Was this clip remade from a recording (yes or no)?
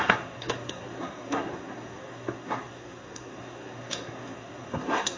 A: yes